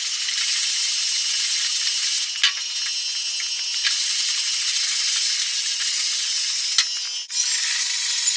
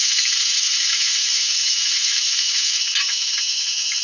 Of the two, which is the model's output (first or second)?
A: second